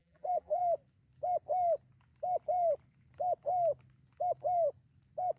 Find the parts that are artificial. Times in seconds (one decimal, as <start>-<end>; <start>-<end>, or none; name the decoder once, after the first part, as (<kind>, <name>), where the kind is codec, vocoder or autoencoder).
0.0-0.6 (vocoder, BigVGAN v2)